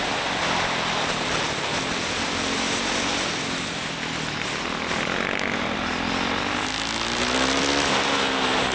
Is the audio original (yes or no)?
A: yes